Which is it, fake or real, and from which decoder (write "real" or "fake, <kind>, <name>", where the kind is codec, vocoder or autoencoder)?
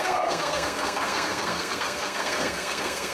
fake, codec, SNAC